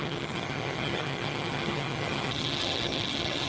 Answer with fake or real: fake